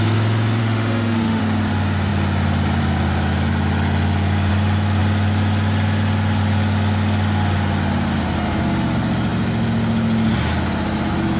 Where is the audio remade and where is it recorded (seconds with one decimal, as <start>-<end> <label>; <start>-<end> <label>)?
0.0-0.6 recorded; 0.6-1.4 remade; 1.4-11.4 recorded